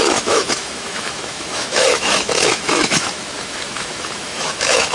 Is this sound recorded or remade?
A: remade